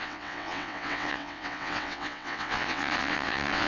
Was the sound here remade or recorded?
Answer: remade